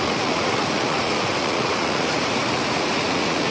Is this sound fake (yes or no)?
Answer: yes